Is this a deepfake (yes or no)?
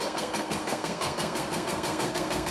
yes